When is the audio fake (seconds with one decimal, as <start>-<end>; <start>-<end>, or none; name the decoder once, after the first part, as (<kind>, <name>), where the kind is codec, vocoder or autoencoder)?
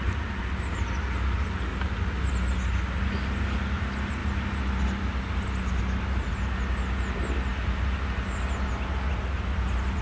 1.7-2.3 (vocoder, BigVGAN v2)